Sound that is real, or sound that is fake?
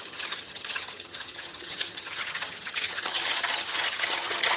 fake